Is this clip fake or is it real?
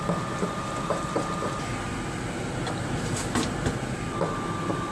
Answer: real